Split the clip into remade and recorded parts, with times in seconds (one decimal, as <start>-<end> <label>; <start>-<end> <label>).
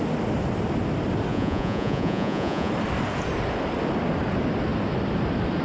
0.0-1.3 recorded; 1.3-2.7 remade; 2.7-5.6 recorded